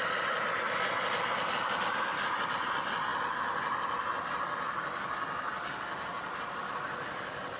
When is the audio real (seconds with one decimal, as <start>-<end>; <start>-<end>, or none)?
3.1-6.5